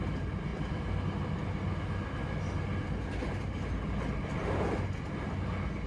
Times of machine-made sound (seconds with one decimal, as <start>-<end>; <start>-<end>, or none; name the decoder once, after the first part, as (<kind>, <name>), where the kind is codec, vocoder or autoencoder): none